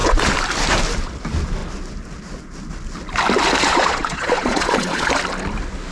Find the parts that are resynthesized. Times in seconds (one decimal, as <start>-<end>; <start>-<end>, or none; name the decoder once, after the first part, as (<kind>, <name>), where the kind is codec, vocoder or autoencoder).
3.7-5.1 (vocoder, Vocos)